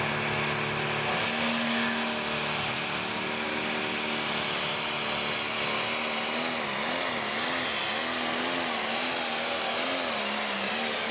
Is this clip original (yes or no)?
yes